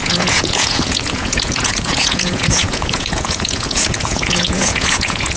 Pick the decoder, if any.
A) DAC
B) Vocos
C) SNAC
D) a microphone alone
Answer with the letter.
B